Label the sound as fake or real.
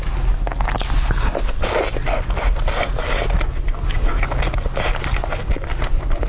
real